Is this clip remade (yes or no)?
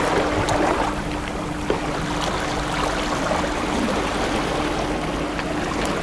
no